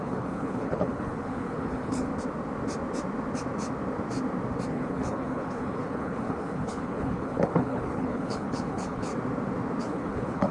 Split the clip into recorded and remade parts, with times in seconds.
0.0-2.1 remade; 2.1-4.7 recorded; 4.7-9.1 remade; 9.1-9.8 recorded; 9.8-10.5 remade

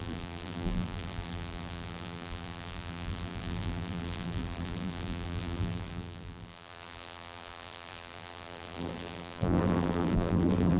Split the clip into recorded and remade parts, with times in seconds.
0.0-10.8 remade

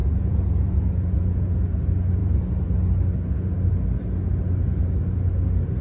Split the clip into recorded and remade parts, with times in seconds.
0.0-1.8 remade; 1.8-5.8 recorded

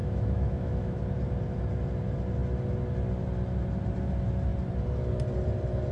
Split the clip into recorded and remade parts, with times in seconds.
0.0-1.0 remade; 1.0-5.9 recorded

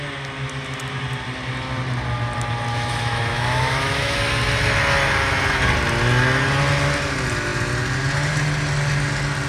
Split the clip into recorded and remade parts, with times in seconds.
0.0-2.7 recorded; 2.7-4.2 remade; 4.2-9.5 recorded

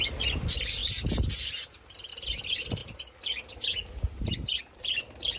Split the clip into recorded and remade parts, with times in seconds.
0.0-5.4 recorded

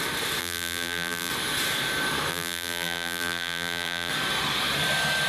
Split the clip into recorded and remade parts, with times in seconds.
0.0-0.4 recorded; 0.4-1.3 remade; 1.3-2.3 recorded; 2.3-4.1 remade; 4.1-5.3 recorded

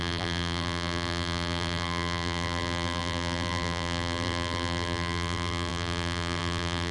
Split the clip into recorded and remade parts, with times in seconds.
0.0-6.9 remade